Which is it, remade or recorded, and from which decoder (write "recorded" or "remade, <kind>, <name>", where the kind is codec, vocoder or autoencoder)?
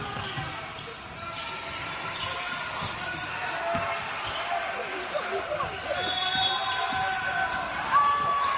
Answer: recorded